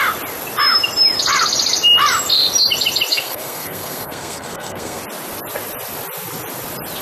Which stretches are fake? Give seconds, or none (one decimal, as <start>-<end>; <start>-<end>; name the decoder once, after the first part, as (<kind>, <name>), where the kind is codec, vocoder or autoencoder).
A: 3.1-5.0 (codec, SNAC)